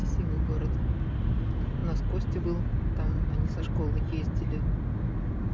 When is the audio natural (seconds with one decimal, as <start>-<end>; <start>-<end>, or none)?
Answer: 0.0-5.5